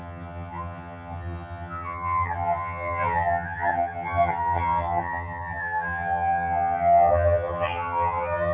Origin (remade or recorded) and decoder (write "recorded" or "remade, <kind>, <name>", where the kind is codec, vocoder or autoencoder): remade, vocoder, HiFi-GAN